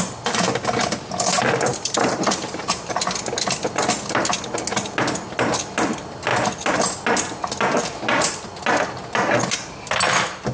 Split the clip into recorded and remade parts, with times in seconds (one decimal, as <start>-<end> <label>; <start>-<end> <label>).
0.0-1.7 recorded; 1.7-3.0 remade; 3.0-10.5 recorded